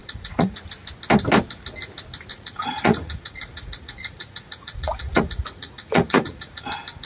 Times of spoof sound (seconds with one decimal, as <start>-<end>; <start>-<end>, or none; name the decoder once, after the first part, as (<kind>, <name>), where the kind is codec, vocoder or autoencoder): 0.0-0.6 (vocoder, Vocos); 2.3-6.6